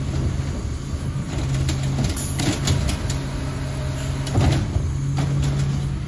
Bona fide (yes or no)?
yes